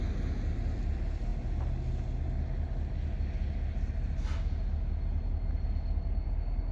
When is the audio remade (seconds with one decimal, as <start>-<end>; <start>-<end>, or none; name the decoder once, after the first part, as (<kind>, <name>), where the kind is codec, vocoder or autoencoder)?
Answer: none